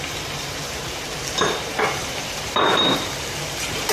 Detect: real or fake fake